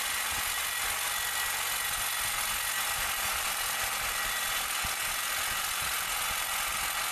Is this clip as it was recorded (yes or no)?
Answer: yes